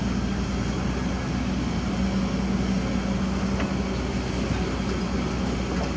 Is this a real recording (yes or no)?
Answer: yes